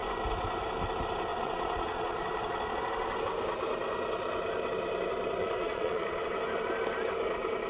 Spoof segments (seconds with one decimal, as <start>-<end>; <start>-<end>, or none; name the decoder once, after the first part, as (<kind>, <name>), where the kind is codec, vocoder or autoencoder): 1.3-2.8 (vocoder, Vocos); 5.4-6.3